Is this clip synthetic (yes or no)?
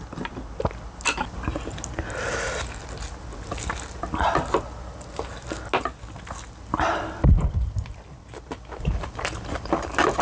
no